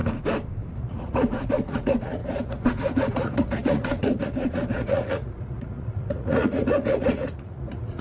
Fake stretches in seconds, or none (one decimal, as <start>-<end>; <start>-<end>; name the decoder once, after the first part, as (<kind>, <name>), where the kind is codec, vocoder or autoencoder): 0.6-8.0 (vocoder, Vocos)

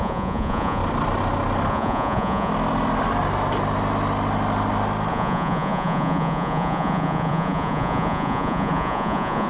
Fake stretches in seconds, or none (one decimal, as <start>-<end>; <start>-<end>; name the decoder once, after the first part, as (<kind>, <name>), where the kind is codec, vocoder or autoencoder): 0.0-0.8 (vocoder, Vocos); 1.7-2.5; 5.1-9.5

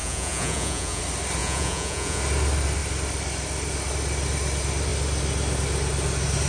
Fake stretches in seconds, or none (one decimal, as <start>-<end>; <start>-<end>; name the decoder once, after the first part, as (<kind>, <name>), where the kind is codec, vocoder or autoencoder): 0.0-1.0 (vocoder, Vocos); 1.4-2.2

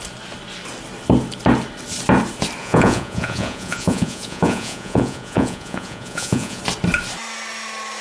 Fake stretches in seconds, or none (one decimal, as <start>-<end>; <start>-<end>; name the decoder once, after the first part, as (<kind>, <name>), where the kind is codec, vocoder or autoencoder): 2.6-6.6 (vocoder, Vocos)

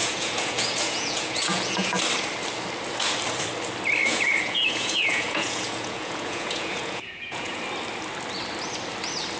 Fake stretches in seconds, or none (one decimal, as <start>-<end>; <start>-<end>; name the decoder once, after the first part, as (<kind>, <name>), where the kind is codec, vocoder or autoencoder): 0.0-2.0 (vocoder, Vocos); 4.0-7.6

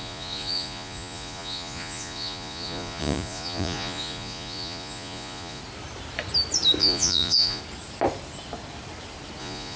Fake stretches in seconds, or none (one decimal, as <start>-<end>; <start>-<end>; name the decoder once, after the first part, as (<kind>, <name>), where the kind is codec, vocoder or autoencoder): 0.0-5.6 (vocoder, Vocos); 6.8-7.6; 9.4-9.8

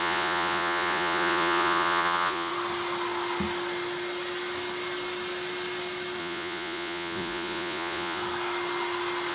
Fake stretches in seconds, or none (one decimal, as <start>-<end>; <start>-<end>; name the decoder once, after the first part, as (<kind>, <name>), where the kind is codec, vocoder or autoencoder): 0.0-2.5 (vocoder, Vocos); 6.2-8.2